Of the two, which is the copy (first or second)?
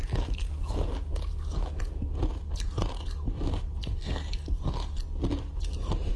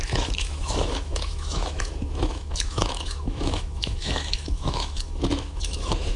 second